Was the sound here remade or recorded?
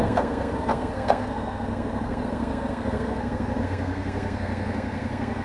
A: remade